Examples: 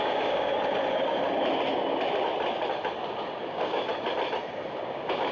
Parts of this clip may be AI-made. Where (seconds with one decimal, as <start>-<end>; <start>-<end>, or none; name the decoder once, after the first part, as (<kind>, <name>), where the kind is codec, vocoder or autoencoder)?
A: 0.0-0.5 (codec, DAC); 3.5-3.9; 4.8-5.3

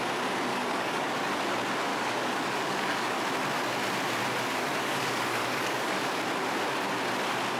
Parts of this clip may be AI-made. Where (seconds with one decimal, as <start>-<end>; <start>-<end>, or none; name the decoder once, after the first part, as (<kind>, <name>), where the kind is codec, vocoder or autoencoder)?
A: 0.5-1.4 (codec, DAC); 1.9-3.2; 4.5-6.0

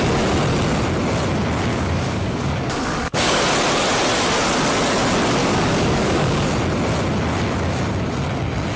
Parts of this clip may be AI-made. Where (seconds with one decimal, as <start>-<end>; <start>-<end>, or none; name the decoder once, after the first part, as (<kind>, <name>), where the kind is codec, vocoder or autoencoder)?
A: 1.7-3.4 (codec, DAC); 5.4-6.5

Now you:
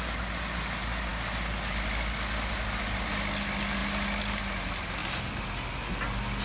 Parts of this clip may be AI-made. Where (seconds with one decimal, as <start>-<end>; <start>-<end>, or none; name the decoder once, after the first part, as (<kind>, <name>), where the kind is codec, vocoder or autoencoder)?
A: none

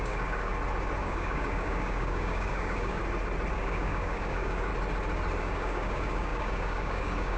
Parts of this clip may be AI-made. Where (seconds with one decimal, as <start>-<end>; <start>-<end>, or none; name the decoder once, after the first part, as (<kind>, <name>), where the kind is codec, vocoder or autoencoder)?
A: 0.0-0.5 (codec, DAC); 1.0-3.0; 3.5-4.7; 5.4-7.4

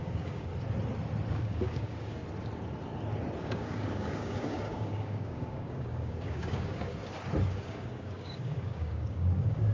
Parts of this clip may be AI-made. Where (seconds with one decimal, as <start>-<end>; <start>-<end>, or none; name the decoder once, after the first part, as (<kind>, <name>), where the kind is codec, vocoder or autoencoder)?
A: 0.0-0.5 (codec, DAC); 1.3-2.2; 3.4-6.9; 7.5-9.7

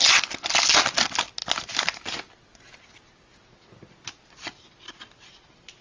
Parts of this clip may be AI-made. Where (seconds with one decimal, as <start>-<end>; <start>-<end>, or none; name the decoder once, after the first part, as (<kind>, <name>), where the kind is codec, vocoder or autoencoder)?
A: none

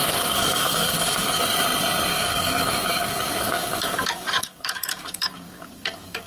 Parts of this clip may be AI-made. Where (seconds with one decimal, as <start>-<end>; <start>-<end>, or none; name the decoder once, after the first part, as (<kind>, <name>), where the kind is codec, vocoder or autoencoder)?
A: 0.0-1.4 (codec, DAC); 2.1-6.3